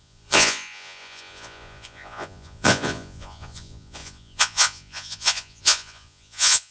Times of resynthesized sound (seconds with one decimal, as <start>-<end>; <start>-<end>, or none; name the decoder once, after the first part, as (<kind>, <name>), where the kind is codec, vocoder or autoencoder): 0.0-6.7 (vocoder, Vocos)